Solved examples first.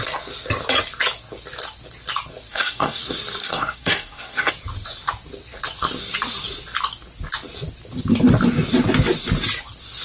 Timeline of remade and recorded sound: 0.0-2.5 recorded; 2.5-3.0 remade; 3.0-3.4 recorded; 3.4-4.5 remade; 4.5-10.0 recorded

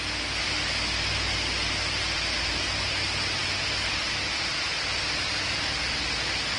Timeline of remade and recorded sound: 0.0-6.6 recorded

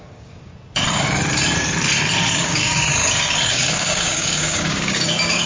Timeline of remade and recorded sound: 0.0-0.5 remade; 0.5-2.3 recorded; 2.3-2.9 remade; 2.9-3.5 recorded; 3.5-5.5 remade

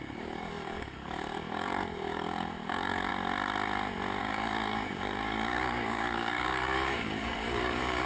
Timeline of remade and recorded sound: 0.0-3.1 remade; 3.1-4.2 recorded; 4.2-8.1 remade

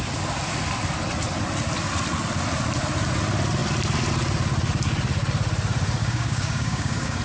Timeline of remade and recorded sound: 0.0-6.0 recorded; 6.0-7.2 remade

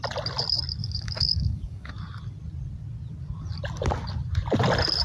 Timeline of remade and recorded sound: 0.0-0.8 recorded; 0.8-1.9 remade; 1.9-5.0 recorded